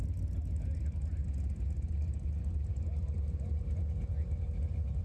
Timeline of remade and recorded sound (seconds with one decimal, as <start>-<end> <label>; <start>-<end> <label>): 0.0-5.0 recorded